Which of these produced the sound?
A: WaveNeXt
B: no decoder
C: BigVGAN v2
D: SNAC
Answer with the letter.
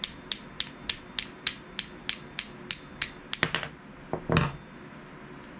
B